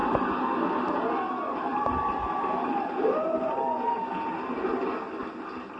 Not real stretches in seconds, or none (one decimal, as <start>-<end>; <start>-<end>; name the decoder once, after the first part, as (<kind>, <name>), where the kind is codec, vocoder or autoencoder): none